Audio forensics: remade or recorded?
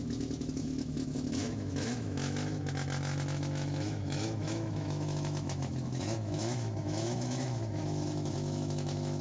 remade